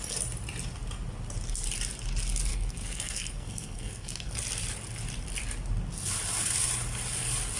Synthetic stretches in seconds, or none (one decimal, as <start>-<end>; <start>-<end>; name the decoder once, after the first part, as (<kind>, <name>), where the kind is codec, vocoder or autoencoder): 2.5-4.3 (codec, SNAC)